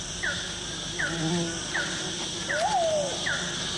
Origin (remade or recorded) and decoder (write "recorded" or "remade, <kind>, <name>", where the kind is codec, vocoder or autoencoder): recorded